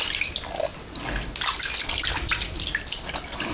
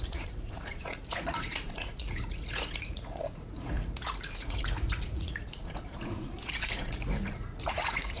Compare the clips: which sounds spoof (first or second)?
second